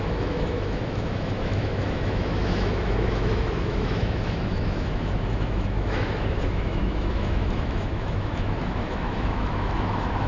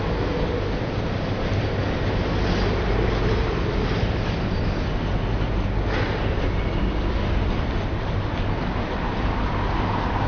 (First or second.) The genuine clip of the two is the second